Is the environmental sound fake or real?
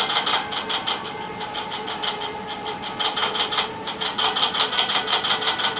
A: real